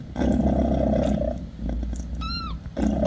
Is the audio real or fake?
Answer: real